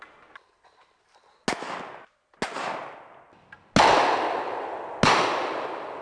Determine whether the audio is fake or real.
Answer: real